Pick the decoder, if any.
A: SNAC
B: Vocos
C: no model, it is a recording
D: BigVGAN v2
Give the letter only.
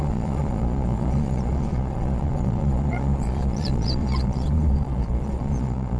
B